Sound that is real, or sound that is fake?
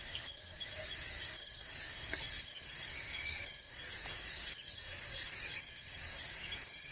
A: fake